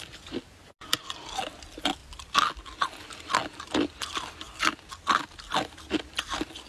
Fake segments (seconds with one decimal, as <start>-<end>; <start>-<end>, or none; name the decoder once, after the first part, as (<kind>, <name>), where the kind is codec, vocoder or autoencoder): none

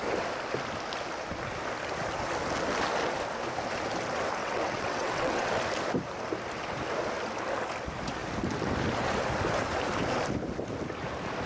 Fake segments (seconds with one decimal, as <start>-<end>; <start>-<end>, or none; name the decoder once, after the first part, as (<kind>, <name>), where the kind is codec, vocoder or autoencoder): 4.4-5.6 (vocoder, WaveNeXt)

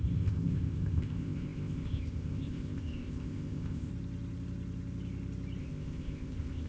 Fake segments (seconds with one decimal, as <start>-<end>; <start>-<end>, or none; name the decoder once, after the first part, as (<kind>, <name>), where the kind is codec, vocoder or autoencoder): 0.0-3.9 (codec, ZipCodec); 5.6-6.7

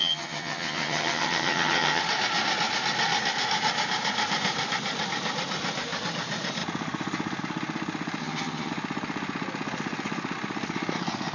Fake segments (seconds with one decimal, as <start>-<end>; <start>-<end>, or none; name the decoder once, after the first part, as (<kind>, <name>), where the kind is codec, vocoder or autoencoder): 0.0-2.0 (vocoder, HiFi-GAN); 8.2-8.7

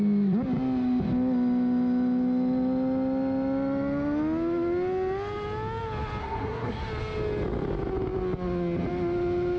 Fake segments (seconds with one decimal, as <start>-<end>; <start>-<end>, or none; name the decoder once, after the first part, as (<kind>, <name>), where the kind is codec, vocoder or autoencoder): 6.2-6.8 (codec, SNAC)